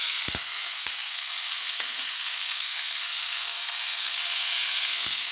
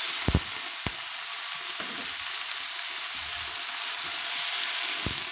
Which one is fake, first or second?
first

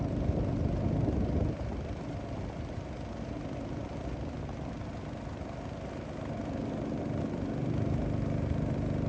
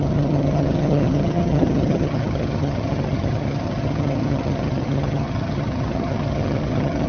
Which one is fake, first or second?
second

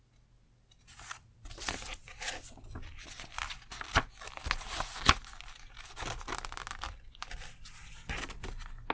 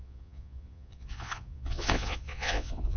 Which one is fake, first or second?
second